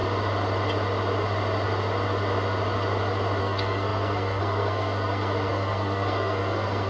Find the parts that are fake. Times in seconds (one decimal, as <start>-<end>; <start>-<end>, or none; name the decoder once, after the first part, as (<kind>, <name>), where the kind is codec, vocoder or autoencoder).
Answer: 3.4-6.9 (codec, SNAC)